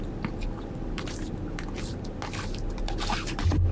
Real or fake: real